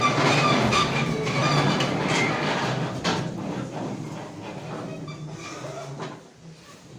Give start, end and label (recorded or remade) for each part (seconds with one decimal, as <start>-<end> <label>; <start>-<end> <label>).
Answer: 0.0-7.0 recorded